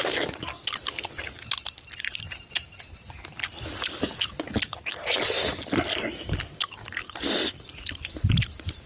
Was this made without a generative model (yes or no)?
yes